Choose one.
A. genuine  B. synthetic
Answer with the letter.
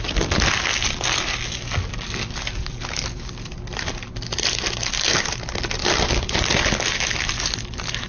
A